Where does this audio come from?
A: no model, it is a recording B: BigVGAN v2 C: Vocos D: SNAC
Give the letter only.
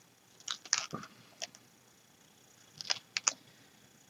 A